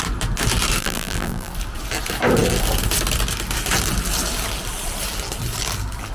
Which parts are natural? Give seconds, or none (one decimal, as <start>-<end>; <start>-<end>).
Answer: 0.0-0.8; 1.5-6.1